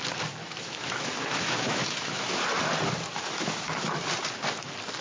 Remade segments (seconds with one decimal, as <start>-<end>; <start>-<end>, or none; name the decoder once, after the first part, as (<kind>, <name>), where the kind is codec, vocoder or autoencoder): 0.4-2.4 (autoencoder, DAC-VAE); 3.1-4.0